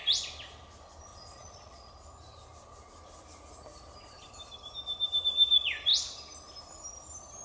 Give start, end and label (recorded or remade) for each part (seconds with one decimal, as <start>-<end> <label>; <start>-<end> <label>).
0.0-1.1 recorded; 1.1-1.9 remade; 1.9-7.4 recorded